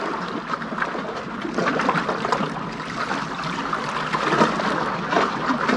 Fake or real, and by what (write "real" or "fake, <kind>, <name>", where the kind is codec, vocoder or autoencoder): fake, vocoder, BigVGAN v2